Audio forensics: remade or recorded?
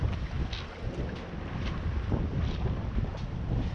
recorded